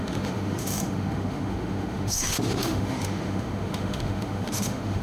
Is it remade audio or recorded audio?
remade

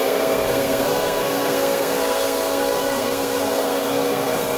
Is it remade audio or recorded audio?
remade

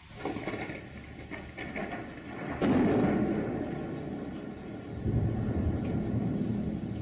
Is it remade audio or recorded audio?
recorded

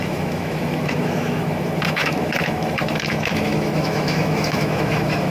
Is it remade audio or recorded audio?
remade